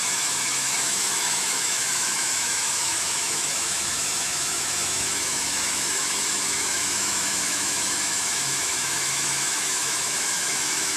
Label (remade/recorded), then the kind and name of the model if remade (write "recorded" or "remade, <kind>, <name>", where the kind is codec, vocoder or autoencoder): remade, autoencoder, DAC-VAE